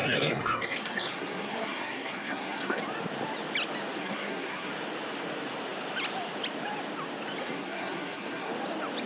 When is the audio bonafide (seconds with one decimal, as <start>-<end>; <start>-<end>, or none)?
2.8-4.0; 4.7-7.4; 8.5-9.1